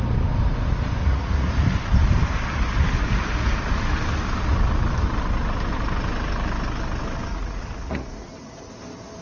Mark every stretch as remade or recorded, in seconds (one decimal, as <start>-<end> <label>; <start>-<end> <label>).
0.0-1.0 recorded; 1.0-1.5 remade; 1.5-7.3 recorded; 7.3-8.7 remade; 8.7-9.2 recorded